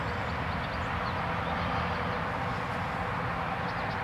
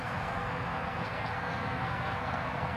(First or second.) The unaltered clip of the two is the first